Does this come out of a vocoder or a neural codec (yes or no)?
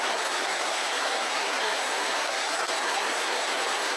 yes